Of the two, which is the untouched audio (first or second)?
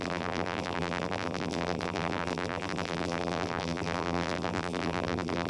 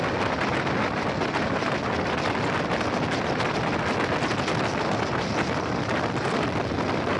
second